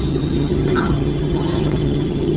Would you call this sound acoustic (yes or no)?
no